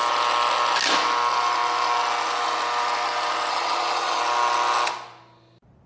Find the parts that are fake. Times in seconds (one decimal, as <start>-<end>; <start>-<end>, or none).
3.5-4.2